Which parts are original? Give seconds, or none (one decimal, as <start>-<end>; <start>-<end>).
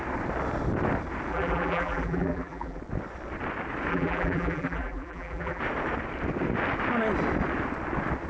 0.0-1.3; 2.8-3.9; 5.6-8.3